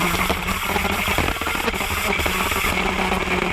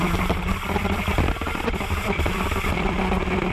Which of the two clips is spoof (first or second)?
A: second